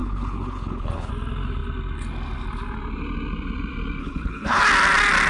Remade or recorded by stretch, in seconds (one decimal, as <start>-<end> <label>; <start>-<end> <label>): 0.0-1.1 remade; 1.1-4.0 recorded; 4.0-4.6 remade; 4.6-5.3 recorded